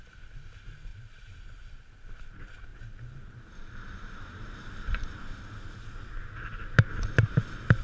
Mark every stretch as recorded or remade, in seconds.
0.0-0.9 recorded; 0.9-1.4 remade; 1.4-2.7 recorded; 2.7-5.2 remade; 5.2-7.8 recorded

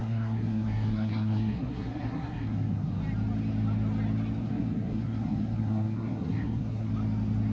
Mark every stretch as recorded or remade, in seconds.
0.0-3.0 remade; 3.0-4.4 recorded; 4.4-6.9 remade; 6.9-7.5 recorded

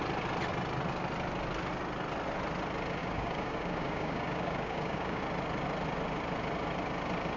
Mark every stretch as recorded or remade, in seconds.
0.0-3.0 recorded; 3.0-5.2 remade; 5.2-7.4 recorded

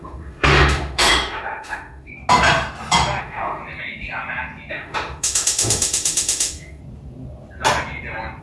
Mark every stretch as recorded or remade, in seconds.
0.0-2.1 remade; 2.1-3.2 recorded; 3.2-3.6 remade; 3.6-4.7 recorded; 4.7-6.8 remade; 6.8-8.4 recorded

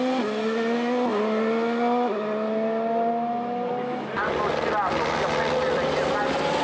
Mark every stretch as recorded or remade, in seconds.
0.0-6.6 recorded